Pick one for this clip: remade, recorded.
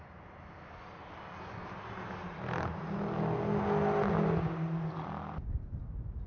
recorded